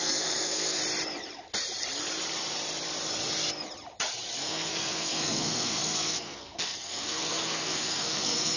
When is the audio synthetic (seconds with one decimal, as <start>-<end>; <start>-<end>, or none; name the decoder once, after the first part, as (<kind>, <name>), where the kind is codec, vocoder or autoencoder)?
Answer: 0.0-0.8 (codec, SNAC); 4.4-8.6